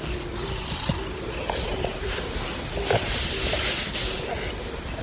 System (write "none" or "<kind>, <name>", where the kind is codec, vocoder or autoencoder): none